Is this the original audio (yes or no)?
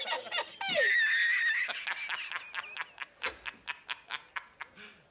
yes